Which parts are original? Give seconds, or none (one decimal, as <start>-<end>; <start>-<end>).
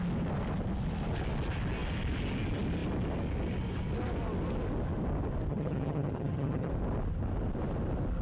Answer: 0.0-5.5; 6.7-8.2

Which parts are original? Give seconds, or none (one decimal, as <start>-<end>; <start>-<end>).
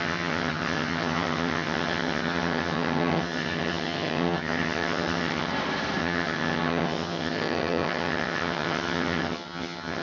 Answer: 5.5-6.0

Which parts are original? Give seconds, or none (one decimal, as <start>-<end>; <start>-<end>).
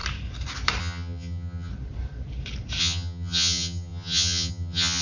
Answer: 0.0-0.8; 1.7-2.8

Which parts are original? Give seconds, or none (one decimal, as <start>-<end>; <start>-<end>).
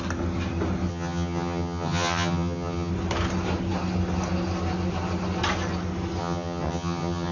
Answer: 0.0-0.9; 2.9-6.2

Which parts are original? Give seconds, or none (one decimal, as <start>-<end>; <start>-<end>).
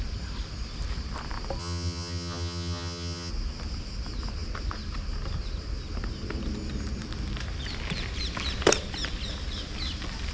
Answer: 0.0-1.6; 3.3-10.3